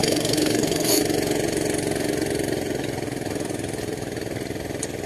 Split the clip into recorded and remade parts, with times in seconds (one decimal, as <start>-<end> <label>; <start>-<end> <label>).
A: 0.0-1.0 remade; 1.0-5.1 recorded